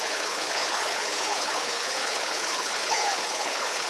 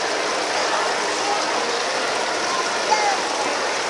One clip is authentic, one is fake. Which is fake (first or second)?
first